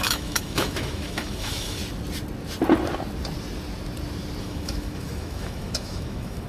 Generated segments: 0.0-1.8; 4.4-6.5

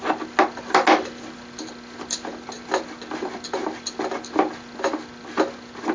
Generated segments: none

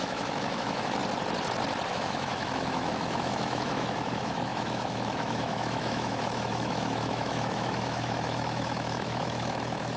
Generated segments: 0.0-1.0; 1.9-10.0

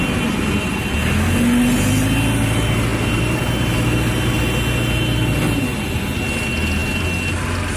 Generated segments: none

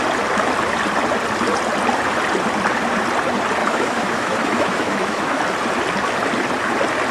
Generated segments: 3.6-5.4

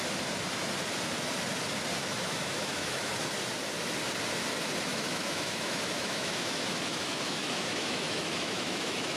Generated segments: 2.0-3.1; 4.9-9.2

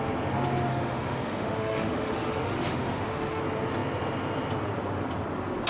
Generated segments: 0.7-3.4

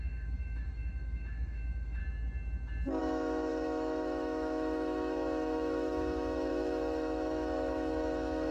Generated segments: 0.0-2.0; 3.0-8.5